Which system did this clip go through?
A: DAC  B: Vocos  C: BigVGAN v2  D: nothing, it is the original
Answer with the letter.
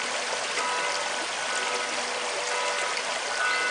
D